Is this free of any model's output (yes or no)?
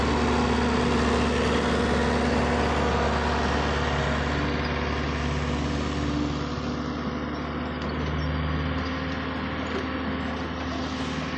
yes